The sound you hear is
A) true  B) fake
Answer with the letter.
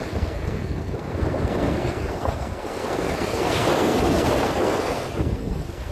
B